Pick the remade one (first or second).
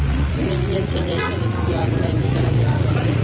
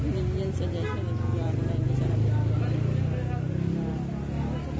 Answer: first